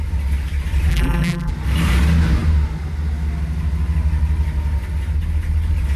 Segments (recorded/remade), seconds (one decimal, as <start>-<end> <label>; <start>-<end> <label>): 0.0-0.9 recorded; 0.9-1.5 remade; 1.5-6.0 recorded